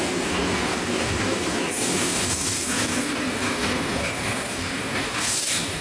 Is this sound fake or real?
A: fake